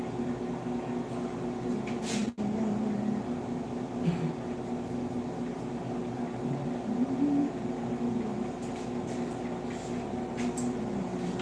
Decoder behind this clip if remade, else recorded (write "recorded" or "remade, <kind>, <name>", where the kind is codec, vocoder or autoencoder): recorded